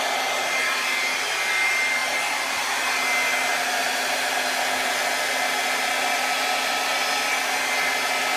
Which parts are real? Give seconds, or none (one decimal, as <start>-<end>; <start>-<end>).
0.0-8.4